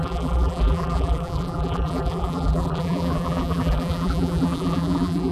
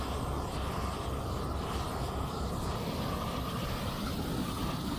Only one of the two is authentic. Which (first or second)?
second